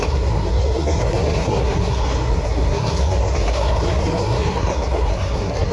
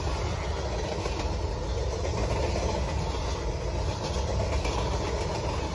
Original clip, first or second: second